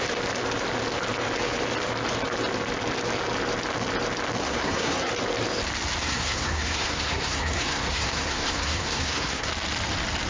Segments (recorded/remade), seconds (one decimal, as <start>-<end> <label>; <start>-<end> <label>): 0.0-4.4 recorded; 4.4-5.1 remade; 5.1-6.0 recorded; 6.0-9.5 remade; 9.5-10.3 recorded